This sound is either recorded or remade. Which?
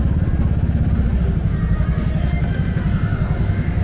recorded